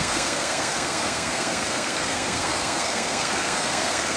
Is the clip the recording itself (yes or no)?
no